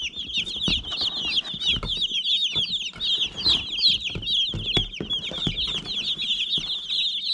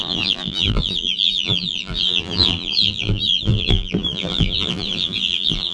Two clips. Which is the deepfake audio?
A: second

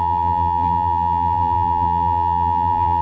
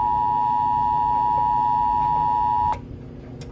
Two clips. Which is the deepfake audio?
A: first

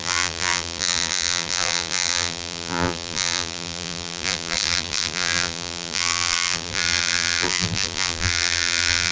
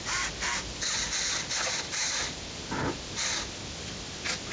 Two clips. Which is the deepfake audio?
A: first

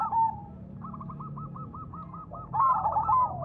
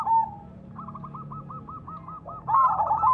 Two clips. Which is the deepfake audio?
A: first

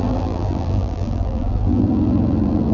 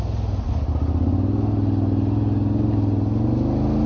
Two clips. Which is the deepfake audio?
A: first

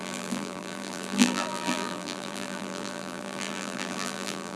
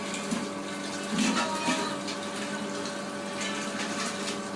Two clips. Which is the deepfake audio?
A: first